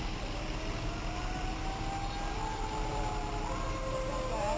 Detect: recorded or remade recorded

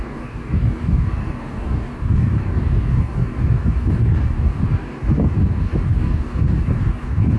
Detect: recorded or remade remade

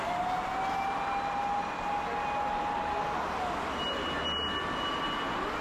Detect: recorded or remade recorded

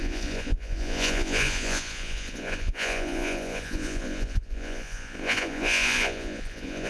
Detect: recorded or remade remade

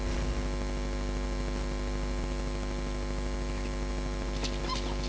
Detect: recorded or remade recorded